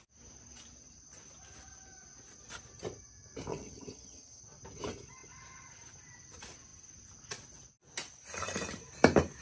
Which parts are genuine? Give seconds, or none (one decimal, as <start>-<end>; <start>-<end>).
0.0-3.5; 4.4-9.4